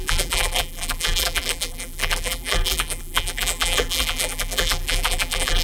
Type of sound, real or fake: fake